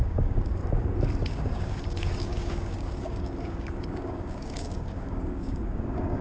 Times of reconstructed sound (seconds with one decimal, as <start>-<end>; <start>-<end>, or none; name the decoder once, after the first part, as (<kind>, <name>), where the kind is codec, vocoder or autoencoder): 0.0-0.6 (codec, DAC); 1.2-6.2